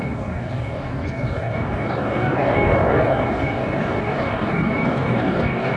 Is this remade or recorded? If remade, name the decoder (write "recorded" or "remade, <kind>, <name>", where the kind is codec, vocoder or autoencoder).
remade, codec, DAC